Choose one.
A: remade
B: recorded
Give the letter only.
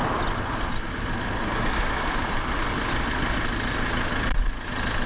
B